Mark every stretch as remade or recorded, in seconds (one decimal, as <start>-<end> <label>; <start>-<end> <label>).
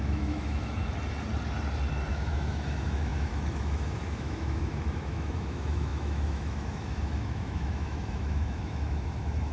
0.0-0.8 remade; 0.8-2.1 recorded; 2.1-9.5 remade